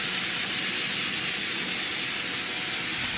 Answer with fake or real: real